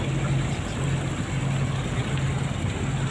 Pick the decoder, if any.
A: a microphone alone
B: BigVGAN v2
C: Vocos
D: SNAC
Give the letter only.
A